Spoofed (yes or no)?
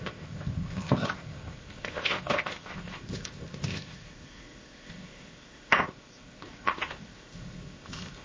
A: yes